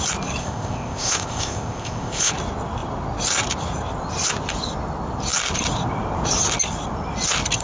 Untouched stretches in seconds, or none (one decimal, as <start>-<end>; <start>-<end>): 0.0-0.4; 2.3-7.6